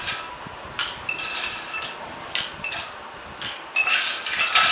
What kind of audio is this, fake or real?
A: real